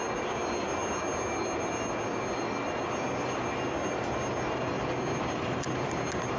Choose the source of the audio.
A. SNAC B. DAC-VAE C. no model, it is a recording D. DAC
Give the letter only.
C